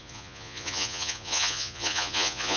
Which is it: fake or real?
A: fake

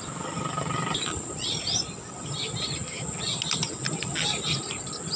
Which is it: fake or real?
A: real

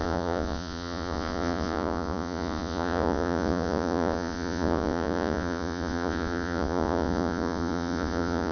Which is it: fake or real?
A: fake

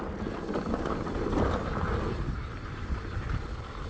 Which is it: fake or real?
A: real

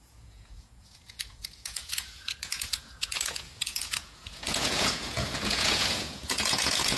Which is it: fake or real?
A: fake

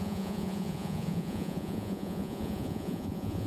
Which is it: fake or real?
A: fake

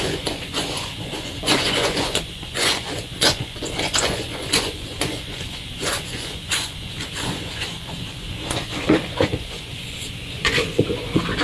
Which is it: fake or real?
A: fake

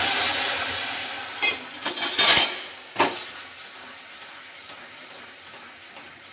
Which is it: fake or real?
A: real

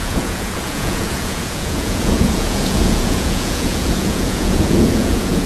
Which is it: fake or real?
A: fake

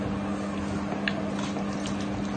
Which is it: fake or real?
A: real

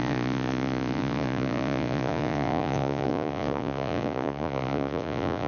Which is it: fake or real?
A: fake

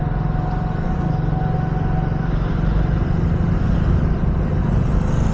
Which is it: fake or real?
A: real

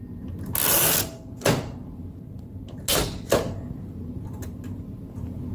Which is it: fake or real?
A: real